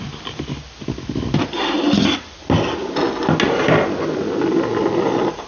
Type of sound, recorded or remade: recorded